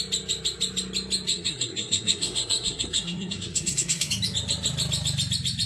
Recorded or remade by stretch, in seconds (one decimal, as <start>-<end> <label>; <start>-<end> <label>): 0.0-1.3 recorded; 1.3-4.1 remade; 4.1-5.7 recorded